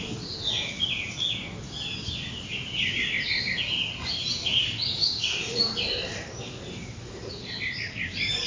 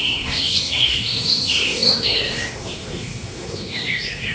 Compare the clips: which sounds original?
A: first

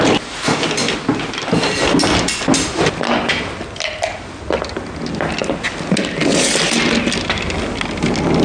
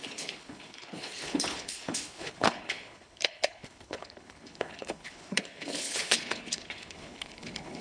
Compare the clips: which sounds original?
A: first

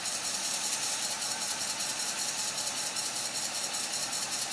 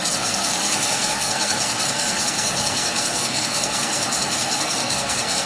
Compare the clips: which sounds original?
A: first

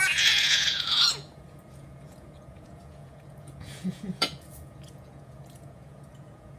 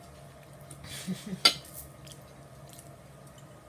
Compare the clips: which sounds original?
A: second